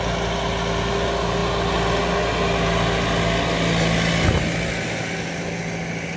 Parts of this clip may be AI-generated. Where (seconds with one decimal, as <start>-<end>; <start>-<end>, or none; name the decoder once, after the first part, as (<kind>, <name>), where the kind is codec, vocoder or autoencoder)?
none